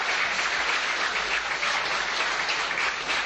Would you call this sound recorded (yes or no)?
yes